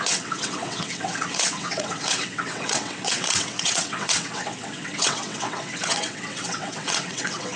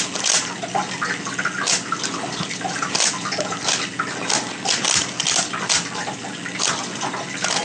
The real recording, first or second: second